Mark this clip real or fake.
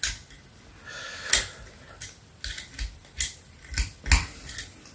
real